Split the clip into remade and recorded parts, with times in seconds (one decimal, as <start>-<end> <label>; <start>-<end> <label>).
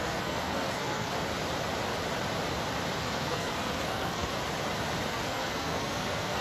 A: 0.0-1.1 remade; 1.1-3.0 recorded; 3.0-4.3 remade; 4.3-5.1 recorded; 5.1-6.4 remade